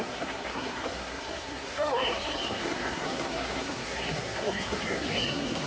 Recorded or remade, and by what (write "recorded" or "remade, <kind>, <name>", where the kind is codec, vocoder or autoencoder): remade, codec, SNAC